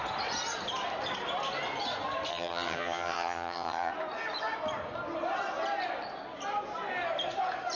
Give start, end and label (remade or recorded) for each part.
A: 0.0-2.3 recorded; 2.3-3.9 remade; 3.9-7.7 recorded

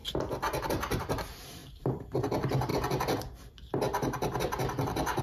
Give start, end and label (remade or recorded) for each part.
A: 0.0-0.6 recorded; 0.6-2.7 remade; 2.7-5.2 recorded